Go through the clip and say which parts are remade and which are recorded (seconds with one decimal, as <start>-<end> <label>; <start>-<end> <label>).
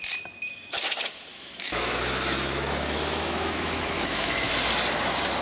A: 0.0-1.3 recorded; 1.3-4.5 remade; 4.5-5.4 recorded